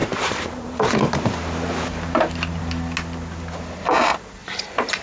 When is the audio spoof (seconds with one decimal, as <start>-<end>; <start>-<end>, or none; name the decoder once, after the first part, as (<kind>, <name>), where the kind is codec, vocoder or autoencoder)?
0.0-2.6 (vocoder, BigVGAN v2); 4.4-5.0